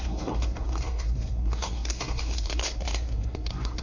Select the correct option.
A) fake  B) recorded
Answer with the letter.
A